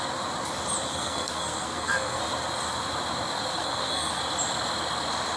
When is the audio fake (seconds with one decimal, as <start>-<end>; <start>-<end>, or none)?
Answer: 0.9-2.2; 3.5-4.2